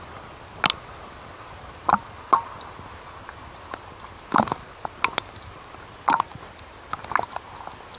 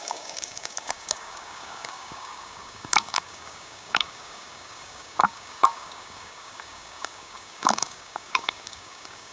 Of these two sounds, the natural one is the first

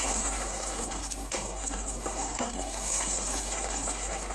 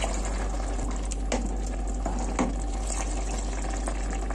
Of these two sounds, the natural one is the second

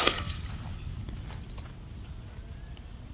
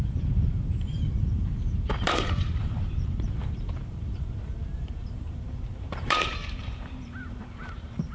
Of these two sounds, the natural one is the first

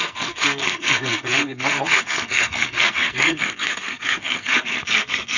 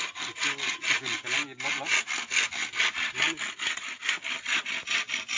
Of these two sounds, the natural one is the second